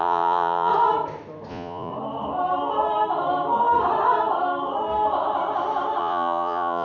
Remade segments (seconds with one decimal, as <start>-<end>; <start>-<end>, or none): 0.0-0.7; 1.5-1.9; 6.0-6.8